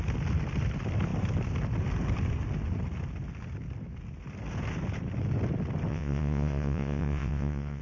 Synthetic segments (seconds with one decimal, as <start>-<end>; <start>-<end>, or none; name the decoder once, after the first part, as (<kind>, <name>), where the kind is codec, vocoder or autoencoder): 5.9-7.8 (vocoder, WaveNeXt)